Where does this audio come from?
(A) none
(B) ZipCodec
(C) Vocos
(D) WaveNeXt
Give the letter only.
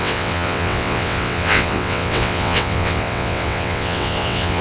D